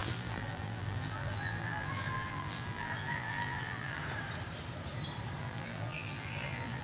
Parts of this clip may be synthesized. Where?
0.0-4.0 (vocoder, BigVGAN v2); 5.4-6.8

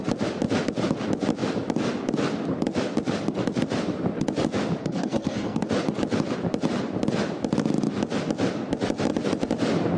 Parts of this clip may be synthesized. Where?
4.8-5.7 (codec, SNAC)

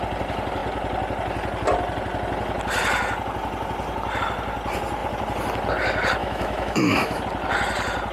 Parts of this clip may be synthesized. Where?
6.2-7.2 (autoencoder, DAC-VAE)

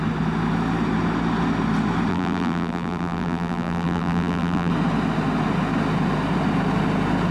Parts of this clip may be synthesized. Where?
2.1-4.7 (vocoder, BigVGAN v2)

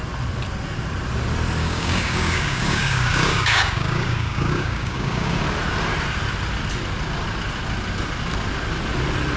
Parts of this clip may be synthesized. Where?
1.6-5.4 (codec, DAC)

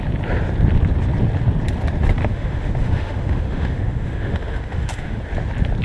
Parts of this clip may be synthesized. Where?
2.2-5.2 (autoencoder, DAC-VAE)